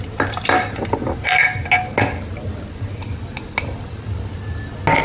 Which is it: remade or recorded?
recorded